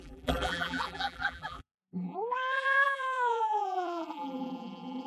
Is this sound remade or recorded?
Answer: remade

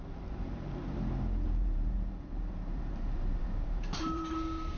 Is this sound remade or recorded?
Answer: remade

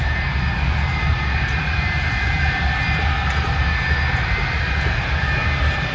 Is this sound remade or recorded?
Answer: remade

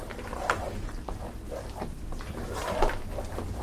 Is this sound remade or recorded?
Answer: recorded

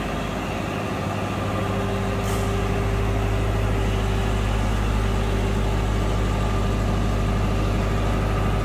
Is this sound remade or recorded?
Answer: recorded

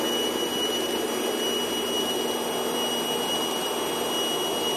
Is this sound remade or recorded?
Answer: recorded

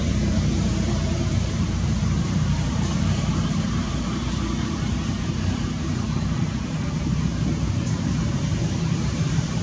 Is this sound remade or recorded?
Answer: remade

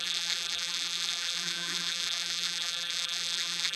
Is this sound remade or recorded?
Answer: remade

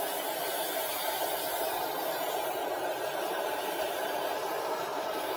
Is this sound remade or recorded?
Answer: remade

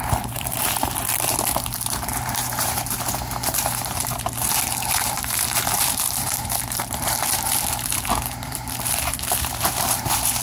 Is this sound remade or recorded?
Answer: remade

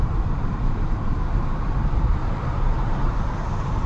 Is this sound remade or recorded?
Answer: remade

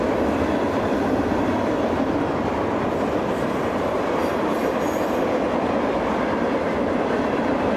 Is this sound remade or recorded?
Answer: remade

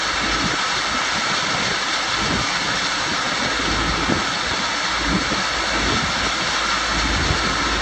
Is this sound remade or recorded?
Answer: recorded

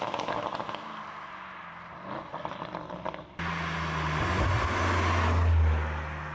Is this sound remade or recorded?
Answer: recorded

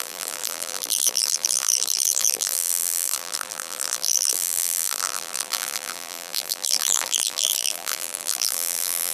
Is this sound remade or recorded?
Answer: remade